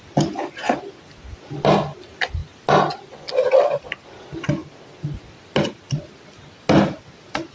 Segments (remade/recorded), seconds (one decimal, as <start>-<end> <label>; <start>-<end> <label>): 0.0-7.5 recorded